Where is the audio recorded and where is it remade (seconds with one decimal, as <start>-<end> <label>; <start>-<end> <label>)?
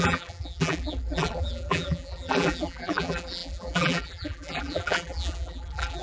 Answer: 0.0-6.0 remade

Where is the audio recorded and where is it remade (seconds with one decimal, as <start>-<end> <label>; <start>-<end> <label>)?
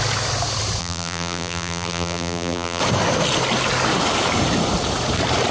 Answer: 0.0-0.8 recorded; 0.8-2.8 remade; 2.8-5.5 recorded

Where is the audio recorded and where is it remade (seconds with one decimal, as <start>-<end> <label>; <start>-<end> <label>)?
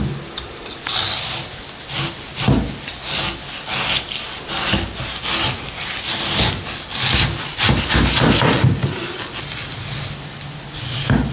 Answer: 0.0-11.3 recorded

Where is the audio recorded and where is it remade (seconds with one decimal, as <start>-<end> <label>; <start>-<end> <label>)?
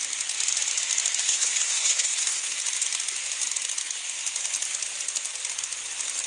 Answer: 0.0-1.2 recorded; 1.2-2.5 remade; 2.5-6.3 recorded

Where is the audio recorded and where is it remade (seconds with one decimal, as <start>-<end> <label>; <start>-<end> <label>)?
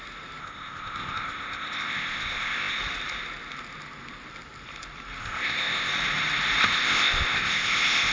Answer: 0.0-0.4 recorded; 0.4-2.8 remade; 2.8-5.2 recorded; 5.2-5.9 remade; 5.9-6.6 recorded; 6.6-8.1 remade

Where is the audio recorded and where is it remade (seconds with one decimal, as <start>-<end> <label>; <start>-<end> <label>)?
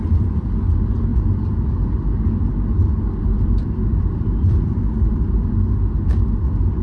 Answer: 0.0-3.2 recorded; 3.2-5.5 remade; 5.5-6.8 recorded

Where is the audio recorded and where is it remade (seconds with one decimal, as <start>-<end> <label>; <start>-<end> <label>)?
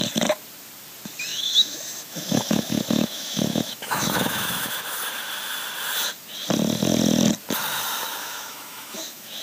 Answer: 0.0-1.3 recorded; 1.3-5.0 remade; 5.0-8.2 recorded; 8.2-9.4 remade